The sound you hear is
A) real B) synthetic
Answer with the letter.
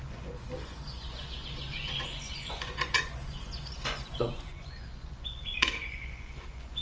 B